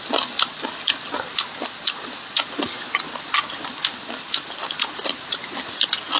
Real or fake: real